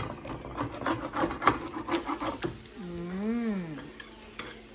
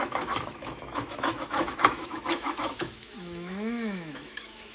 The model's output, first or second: second